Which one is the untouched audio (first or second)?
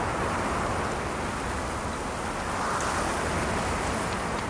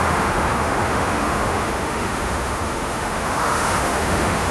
first